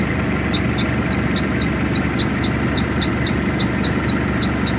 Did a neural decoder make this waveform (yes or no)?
no